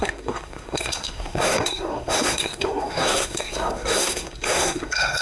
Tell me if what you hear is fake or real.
fake